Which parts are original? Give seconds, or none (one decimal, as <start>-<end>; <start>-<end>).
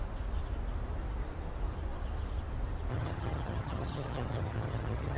0.0-2.9